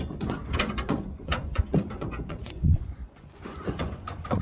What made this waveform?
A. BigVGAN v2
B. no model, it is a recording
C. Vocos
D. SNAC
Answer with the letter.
C